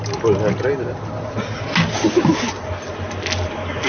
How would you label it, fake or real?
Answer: real